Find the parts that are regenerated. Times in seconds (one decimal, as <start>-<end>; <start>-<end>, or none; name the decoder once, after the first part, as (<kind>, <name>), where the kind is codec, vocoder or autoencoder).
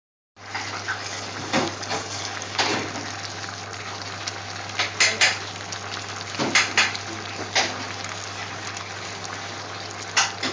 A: 0.9-2.6 (codec, DAC)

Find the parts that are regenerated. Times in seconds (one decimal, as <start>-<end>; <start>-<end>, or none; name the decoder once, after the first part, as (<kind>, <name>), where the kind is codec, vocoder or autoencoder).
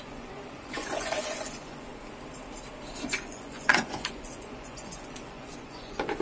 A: 0.0-1.9 (vocoder, Vocos); 3.0-6.2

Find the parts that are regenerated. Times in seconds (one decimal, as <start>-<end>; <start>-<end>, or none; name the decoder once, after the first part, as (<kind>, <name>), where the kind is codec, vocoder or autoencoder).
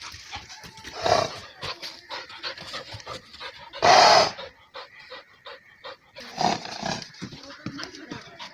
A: 0.0-8.5 (vocoder, BigVGAN v2)